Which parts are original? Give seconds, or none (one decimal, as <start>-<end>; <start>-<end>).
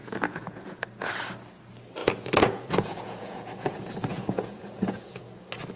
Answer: 0.8-2.0; 5.2-5.8